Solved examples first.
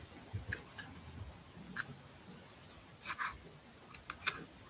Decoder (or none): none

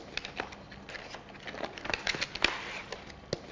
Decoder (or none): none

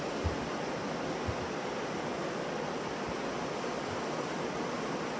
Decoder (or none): none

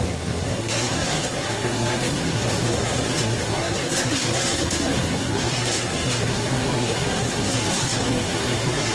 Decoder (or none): codec, SNAC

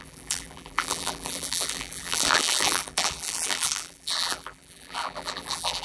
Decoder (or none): vocoder, BigVGAN v2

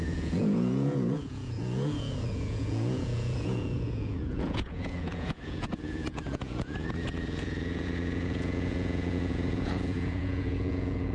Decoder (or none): vocoder, Vocos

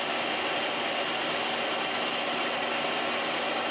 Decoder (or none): none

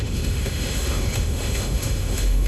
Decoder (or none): autoencoder, DAC-VAE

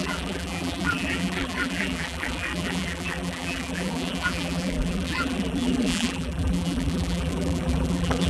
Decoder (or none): vocoder, BigVGAN v2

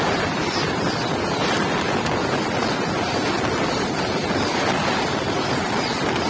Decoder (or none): none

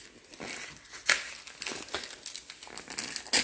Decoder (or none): none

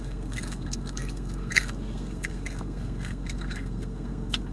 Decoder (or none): codec, SNAC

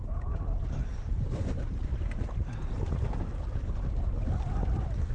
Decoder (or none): none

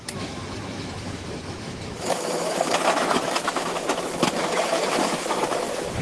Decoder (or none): autoencoder, DAC-VAE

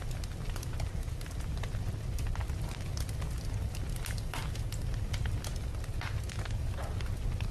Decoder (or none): none